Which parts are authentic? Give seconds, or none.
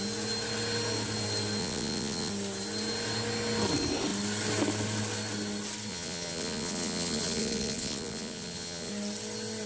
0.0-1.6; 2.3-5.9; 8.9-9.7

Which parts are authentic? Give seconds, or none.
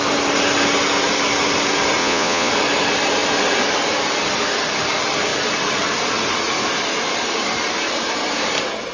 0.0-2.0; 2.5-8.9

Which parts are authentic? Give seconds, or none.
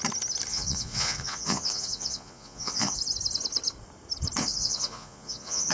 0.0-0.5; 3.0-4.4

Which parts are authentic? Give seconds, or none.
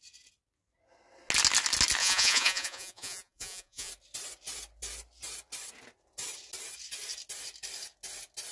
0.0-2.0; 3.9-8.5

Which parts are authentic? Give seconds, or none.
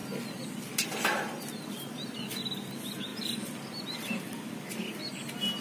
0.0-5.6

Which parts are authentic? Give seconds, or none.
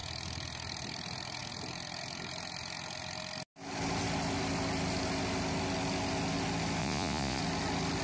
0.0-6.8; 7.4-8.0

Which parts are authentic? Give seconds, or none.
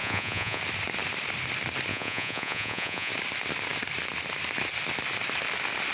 0.6-1.9; 3.1-5.9